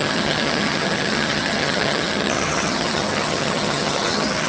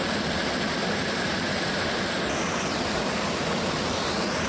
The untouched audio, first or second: second